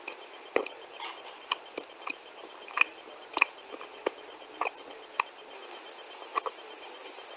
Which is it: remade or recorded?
recorded